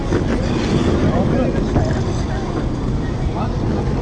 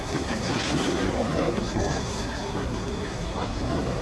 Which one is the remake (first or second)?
second